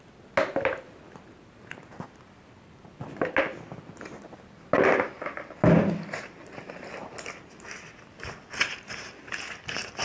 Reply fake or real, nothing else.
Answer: real